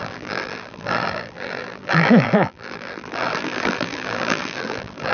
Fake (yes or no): yes